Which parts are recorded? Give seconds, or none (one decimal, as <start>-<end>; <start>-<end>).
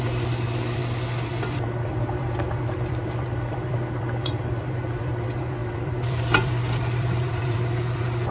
0.8-1.4